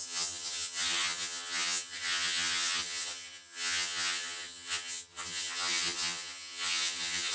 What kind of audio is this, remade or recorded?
remade